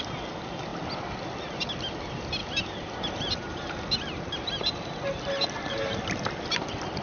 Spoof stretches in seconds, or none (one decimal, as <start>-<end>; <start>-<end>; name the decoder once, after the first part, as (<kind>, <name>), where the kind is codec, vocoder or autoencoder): none